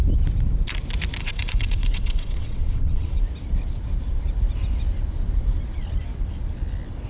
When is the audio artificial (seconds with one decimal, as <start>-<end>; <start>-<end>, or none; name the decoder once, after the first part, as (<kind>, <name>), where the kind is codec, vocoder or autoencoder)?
1.2-3.2 (vocoder, WaveNeXt)